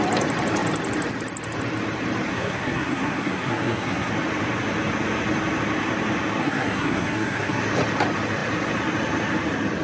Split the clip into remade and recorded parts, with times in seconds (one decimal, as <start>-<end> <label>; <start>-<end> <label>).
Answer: 0.0-2.3 recorded; 2.3-4.1 remade; 4.1-6.4 recorded; 6.4-7.6 remade; 7.6-9.8 recorded

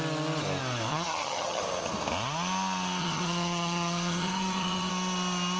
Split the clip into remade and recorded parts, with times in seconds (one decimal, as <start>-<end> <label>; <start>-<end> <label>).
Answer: 0.0-0.9 recorded; 0.9-1.6 remade; 1.6-3.0 recorded; 3.0-4.9 remade; 4.9-5.6 recorded

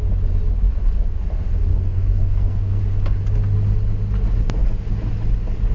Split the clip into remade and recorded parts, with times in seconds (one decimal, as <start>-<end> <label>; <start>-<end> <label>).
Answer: 0.0-1.7 recorded; 1.7-2.8 remade; 2.8-5.7 recorded

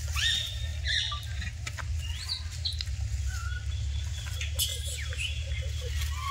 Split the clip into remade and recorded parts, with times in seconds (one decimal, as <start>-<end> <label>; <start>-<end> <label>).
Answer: 0.0-6.3 recorded

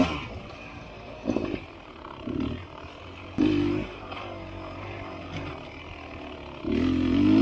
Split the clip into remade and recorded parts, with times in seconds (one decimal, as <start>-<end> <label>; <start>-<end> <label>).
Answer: 0.0-0.7 recorded; 0.7-2.9 remade; 2.9-7.4 recorded

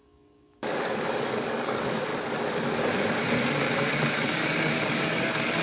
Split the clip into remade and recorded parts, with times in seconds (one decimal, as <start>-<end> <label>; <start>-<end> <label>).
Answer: 0.0-2.1 remade; 2.1-3.8 recorded; 3.8-5.6 remade

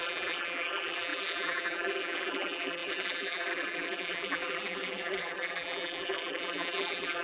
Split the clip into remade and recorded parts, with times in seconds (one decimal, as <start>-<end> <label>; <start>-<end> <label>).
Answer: 0.0-7.2 remade